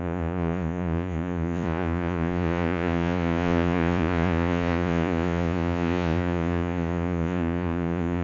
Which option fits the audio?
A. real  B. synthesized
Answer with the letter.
B